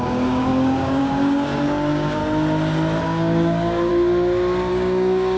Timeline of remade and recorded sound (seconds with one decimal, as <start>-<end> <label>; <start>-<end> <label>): 0.0-2.2 remade; 2.2-3.0 recorded; 3.0-3.9 remade; 3.9-4.7 recorded; 4.7-5.4 remade